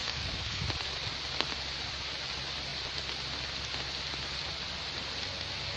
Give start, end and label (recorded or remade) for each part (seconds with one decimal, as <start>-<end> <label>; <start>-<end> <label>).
0.0-0.6 remade; 0.6-5.8 recorded